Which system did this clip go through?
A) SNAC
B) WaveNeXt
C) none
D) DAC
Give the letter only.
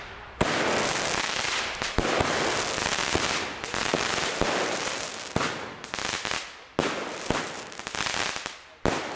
C